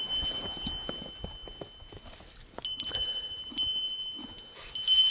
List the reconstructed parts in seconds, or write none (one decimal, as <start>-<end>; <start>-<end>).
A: none